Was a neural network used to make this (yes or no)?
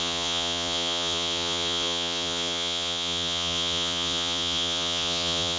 yes